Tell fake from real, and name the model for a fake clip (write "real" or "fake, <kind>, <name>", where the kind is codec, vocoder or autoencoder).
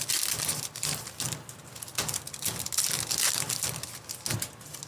real